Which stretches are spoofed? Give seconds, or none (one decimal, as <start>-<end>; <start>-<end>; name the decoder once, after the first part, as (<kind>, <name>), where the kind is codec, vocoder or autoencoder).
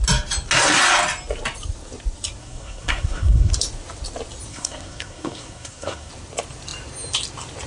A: 2.4-3.5 (codec, SNAC); 4.5-6.1